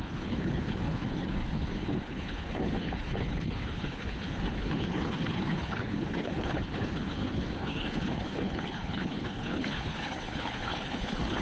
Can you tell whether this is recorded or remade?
remade